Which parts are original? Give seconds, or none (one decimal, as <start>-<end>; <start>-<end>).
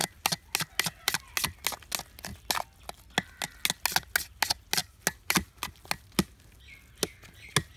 0.0-7.8